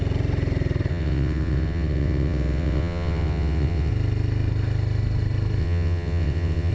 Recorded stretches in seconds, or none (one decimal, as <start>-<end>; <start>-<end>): 0.0-0.9; 3.9-5.6